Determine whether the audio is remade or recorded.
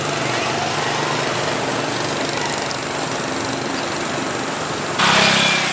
recorded